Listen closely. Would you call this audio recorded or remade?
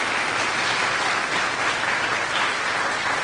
recorded